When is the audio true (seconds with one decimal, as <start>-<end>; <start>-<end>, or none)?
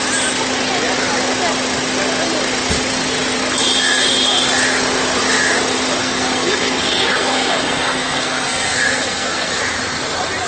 0.0-6.0; 9.5-10.5